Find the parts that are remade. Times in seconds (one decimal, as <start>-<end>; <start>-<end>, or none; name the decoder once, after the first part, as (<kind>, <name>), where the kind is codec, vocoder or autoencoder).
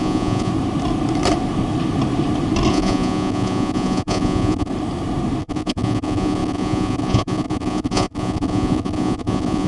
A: 0.0-0.5 (vocoder, Vocos); 2.7-4.7; 5.4-9.7